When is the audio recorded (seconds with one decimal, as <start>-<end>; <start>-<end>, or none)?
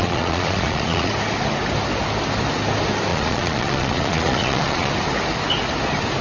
1.1-3.1; 4.9-6.2